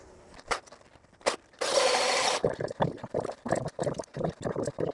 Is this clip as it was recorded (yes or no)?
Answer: no